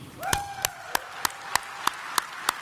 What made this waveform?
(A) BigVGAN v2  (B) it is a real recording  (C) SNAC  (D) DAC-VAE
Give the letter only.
B